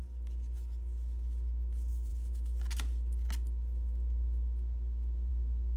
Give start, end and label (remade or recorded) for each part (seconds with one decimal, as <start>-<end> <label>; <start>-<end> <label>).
0.0-5.8 recorded